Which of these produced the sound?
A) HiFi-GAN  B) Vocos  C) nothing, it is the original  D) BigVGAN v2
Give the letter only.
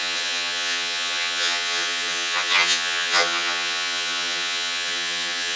A